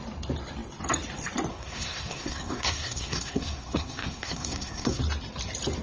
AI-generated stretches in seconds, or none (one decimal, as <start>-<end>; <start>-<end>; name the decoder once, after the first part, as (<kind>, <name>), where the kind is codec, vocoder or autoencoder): 1.5-5.0 (codec, SNAC)